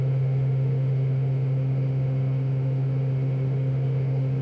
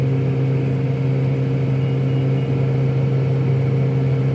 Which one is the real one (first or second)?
second